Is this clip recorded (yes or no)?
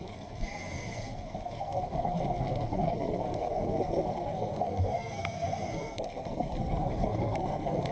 no